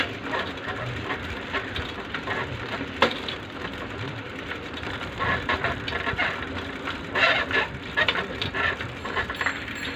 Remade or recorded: remade